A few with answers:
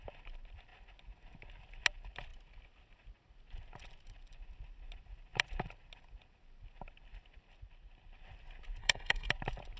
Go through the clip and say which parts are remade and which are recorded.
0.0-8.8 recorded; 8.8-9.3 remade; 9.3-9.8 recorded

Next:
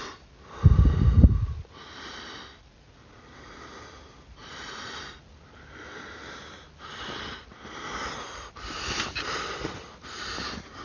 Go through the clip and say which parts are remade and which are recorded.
0.0-10.8 recorded

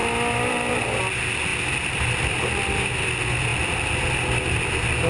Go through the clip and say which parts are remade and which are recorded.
0.0-5.1 recorded

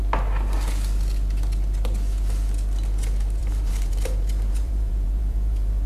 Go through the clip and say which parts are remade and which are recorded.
0.0-3.4 recorded; 3.4-5.9 remade

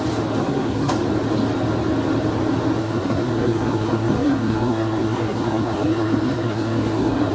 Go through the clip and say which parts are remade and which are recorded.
0.0-0.4 recorded; 0.4-0.9 remade; 0.9-2.8 recorded; 2.8-7.3 remade

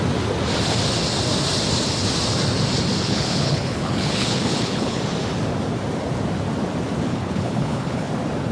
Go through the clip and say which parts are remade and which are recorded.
0.0-2.9 recorded; 2.9-5.0 remade; 5.0-7.1 recorded; 7.1-8.1 remade; 8.1-8.5 recorded